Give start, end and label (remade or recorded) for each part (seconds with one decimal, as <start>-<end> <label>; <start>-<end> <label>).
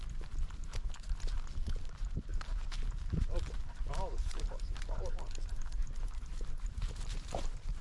0.0-0.7 remade; 0.7-1.3 recorded; 1.3-2.3 remade; 2.3-2.9 recorded; 2.9-5.8 remade; 5.8-6.5 recorded; 6.5-7.8 remade